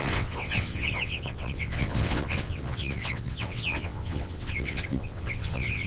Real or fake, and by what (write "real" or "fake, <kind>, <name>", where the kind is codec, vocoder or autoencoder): fake, vocoder, WaveNeXt